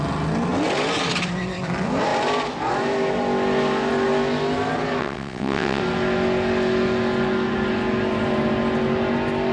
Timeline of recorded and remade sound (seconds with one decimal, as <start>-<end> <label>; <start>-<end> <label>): 0.0-5.0 recorded; 5.0-5.8 remade; 5.8-9.5 recorded